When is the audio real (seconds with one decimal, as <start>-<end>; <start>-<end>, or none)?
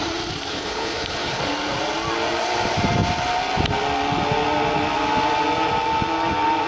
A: 0.0-0.5; 1.4-6.7